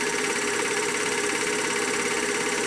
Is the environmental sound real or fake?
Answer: fake